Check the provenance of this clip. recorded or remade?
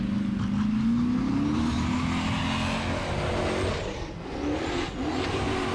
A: recorded